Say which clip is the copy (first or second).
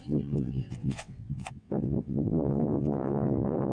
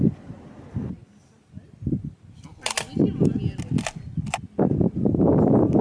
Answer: first